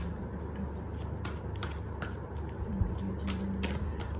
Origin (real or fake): real